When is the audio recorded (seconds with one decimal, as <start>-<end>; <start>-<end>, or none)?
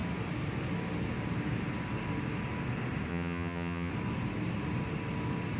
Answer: 0.0-3.1; 3.9-5.6